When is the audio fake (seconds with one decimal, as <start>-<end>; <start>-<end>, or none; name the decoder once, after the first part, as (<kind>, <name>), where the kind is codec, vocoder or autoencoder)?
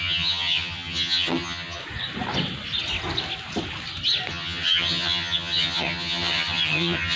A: 0.0-1.8 (vocoder, HiFi-GAN); 4.3-7.2